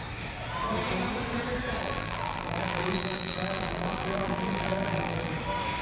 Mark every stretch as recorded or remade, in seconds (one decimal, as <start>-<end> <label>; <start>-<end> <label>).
0.0-1.8 recorded; 1.8-5.3 remade; 5.3-5.8 recorded